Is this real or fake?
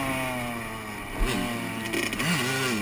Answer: real